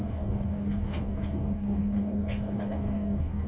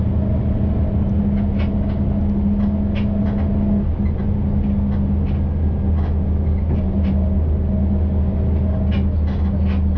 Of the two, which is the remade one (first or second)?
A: first